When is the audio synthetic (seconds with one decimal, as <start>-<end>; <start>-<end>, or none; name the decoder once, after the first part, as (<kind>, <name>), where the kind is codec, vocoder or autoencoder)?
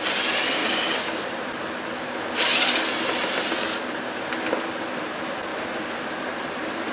none